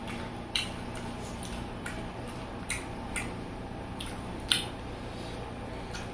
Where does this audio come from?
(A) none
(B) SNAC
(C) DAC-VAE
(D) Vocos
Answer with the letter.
A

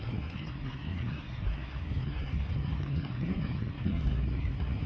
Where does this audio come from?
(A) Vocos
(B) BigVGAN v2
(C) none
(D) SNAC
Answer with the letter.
D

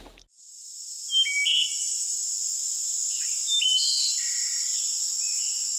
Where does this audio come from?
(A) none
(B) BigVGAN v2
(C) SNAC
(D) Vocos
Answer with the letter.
A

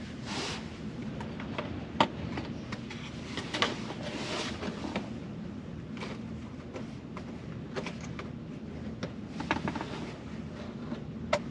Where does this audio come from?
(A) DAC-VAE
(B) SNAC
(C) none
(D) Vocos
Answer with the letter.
C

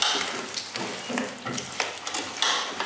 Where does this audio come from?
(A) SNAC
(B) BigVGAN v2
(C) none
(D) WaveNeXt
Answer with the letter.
C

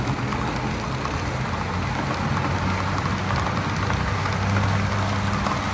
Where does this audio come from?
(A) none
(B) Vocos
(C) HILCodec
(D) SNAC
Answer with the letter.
A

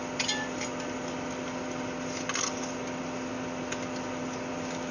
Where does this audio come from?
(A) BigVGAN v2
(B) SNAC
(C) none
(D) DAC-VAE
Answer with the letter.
C